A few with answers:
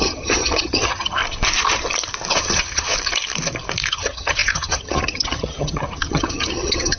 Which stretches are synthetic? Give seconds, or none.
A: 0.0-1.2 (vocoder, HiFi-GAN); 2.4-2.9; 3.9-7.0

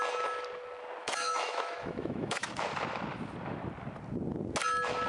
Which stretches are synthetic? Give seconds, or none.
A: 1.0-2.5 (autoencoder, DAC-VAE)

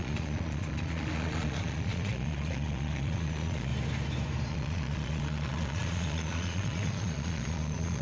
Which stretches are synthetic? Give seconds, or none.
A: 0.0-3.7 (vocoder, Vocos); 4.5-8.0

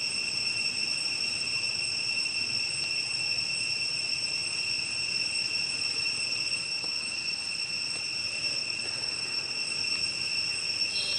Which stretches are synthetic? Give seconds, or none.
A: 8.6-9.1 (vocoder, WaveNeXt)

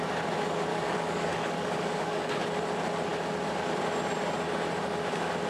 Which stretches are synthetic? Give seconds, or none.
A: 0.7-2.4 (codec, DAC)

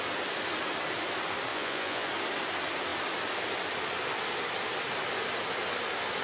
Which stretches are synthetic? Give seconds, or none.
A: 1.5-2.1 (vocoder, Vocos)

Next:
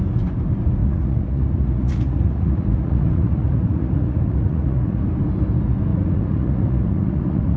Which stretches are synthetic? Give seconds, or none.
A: 0.8-5.0 (vocoder, Vocos); 5.9-7.6

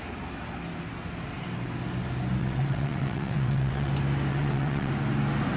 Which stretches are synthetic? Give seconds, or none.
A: 2.4-3.9 (vocoder, WaveNeXt); 4.3-4.9